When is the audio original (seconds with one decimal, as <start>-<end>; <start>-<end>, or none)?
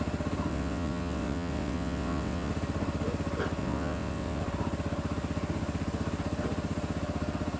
0.0-0.5; 2.5-3.6; 4.4-7.6